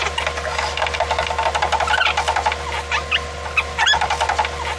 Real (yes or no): yes